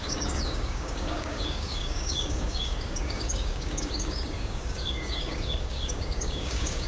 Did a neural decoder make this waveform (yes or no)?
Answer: yes